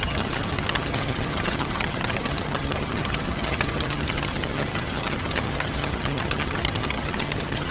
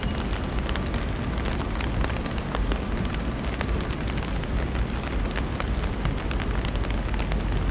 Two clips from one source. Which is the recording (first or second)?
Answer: second